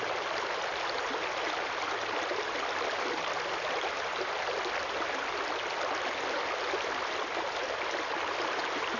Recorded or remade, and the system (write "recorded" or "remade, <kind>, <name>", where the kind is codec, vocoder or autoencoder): recorded